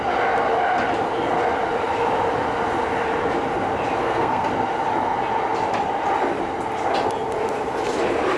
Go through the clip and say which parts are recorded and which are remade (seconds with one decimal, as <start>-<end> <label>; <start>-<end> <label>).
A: 0.0-4.0 recorded; 4.0-4.5 remade; 4.5-8.4 recorded